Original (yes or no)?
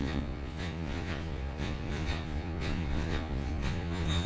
no